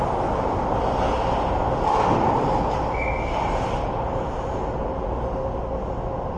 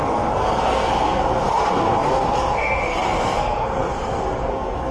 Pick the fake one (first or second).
second